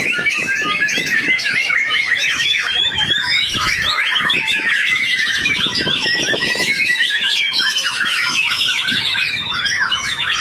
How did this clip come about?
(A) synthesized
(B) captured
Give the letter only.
A